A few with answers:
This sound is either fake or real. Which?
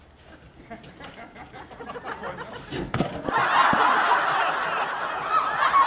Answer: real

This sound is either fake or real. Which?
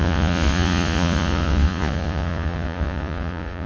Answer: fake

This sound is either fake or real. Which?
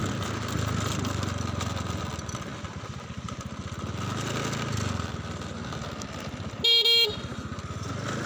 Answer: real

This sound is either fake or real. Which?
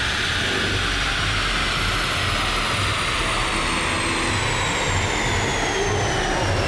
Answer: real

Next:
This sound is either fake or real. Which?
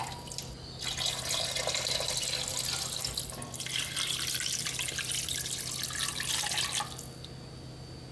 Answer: real